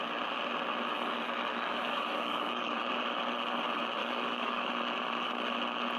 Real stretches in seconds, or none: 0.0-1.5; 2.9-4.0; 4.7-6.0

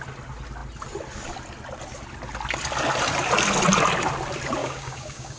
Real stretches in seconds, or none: 0.0-4.6